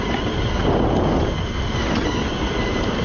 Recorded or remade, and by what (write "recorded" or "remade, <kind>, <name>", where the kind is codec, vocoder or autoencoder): recorded